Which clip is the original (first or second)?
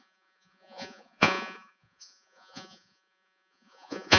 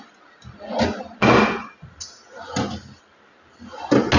second